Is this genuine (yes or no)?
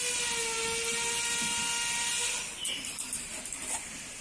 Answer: yes